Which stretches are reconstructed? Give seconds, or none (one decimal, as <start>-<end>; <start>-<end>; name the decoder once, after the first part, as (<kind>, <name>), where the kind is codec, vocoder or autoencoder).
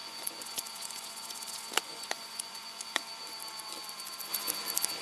0.0-3.0 (vocoder, Vocos)